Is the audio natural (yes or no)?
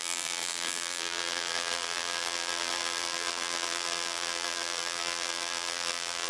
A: no